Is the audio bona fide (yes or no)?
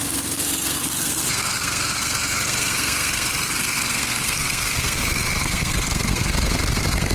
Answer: no